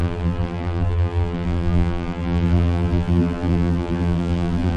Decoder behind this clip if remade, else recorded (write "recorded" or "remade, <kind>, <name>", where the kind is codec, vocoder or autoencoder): remade, vocoder, BigVGAN v2